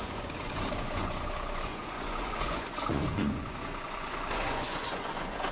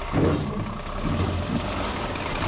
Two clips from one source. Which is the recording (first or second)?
second